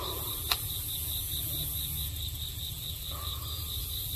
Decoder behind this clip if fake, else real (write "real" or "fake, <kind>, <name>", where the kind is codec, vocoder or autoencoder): fake, vocoder, BigVGAN v2